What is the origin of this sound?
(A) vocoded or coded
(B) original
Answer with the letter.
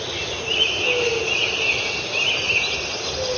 B